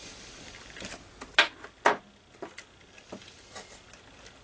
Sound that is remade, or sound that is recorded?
recorded